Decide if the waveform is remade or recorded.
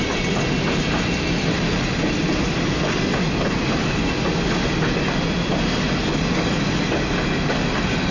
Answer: recorded